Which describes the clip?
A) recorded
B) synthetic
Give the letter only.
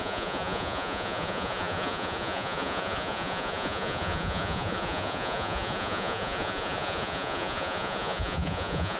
B